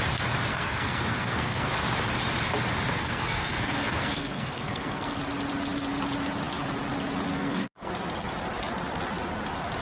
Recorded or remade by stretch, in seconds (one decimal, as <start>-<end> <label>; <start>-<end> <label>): 0.0-0.5 recorded; 0.5-1.7 remade; 1.7-2.9 recorded; 2.9-5.2 remade; 5.2-7.3 recorded; 7.3-7.9 remade; 7.9-9.8 recorded